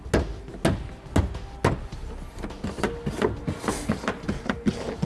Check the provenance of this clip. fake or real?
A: real